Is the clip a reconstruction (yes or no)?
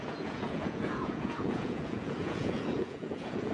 yes